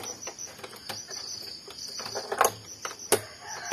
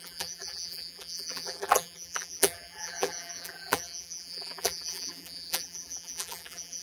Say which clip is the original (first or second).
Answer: first